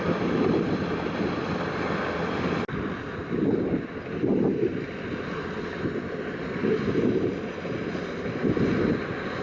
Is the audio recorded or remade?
recorded